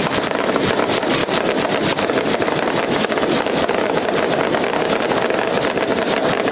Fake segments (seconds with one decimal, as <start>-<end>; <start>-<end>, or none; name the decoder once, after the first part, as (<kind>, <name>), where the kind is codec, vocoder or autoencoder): none